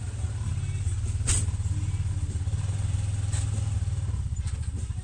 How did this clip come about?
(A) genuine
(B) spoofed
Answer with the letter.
B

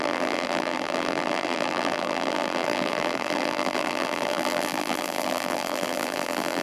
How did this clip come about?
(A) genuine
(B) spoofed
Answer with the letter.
B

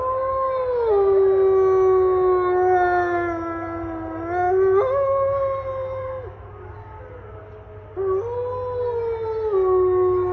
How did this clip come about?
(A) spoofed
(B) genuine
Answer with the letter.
B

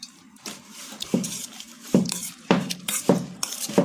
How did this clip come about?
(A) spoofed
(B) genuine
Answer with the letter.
A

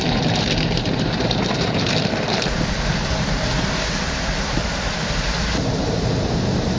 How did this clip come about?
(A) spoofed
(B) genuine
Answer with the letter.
A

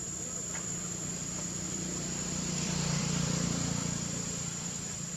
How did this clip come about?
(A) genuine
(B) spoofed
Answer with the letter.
B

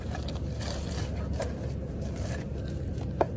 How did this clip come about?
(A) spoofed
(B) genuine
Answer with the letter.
A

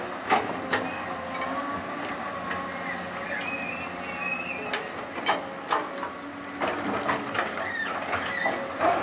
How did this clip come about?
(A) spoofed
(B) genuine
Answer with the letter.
B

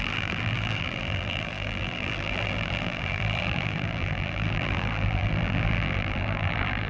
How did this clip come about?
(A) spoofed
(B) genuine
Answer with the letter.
A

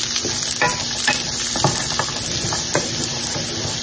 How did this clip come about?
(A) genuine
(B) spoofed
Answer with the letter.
A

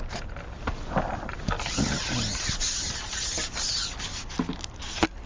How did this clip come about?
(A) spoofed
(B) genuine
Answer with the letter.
B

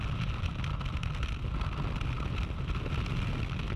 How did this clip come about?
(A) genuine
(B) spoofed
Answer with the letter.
A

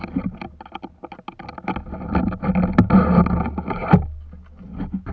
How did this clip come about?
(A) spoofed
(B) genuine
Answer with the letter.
B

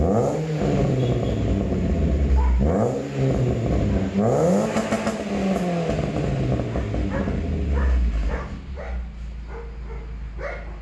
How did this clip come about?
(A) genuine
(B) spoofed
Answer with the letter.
A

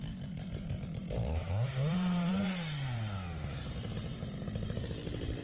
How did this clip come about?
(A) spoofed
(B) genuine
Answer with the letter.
A